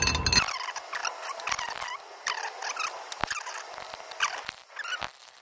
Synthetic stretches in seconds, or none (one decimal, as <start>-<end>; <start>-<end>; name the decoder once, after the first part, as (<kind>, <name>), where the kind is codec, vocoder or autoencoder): none